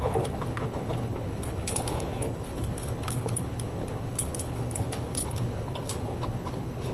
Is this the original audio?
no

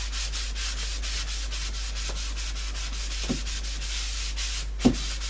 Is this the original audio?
yes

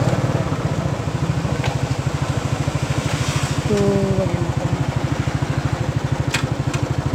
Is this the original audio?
yes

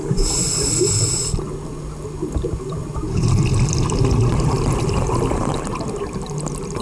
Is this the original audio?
yes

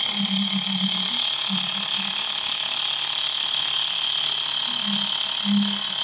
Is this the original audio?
yes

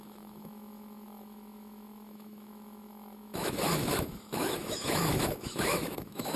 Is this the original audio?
no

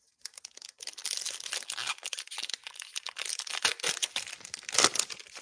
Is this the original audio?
yes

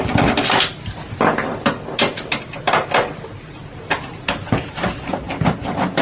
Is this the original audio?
yes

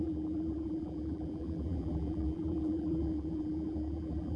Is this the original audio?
no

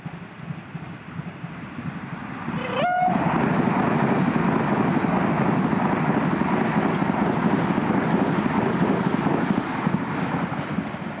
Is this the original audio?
yes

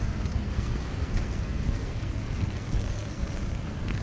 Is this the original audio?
no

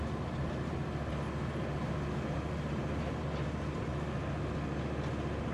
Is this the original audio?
yes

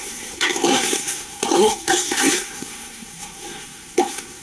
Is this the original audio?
no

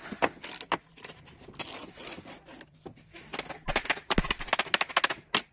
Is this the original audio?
yes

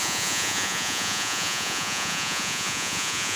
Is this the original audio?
no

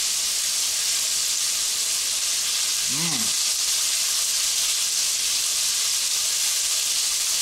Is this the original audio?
yes